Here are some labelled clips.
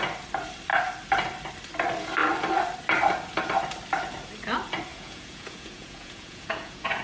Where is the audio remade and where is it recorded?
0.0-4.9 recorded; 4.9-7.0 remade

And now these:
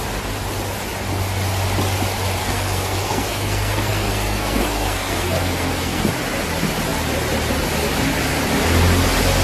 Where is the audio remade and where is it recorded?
0.0-2.4 recorded; 2.4-6.1 remade; 6.1-9.4 recorded

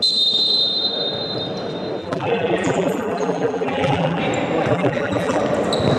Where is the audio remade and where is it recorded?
0.0-2.0 recorded; 2.0-4.2 remade; 4.2-4.7 recorded; 4.7-5.4 remade; 5.4-6.0 recorded

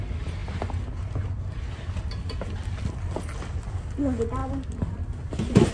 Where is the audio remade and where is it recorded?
0.0-5.7 recorded